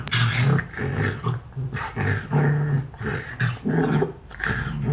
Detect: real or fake real